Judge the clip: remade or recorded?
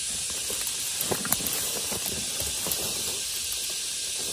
recorded